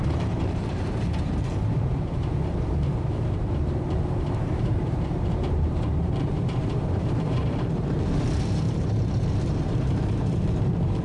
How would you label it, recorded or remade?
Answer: remade